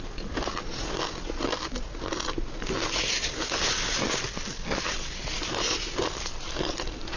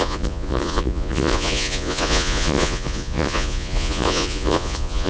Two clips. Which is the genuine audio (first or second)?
first